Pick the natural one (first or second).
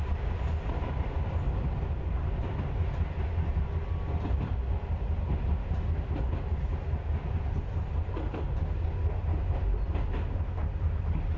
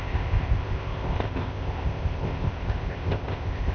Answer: first